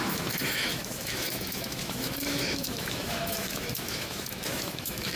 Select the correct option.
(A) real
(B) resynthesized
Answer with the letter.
B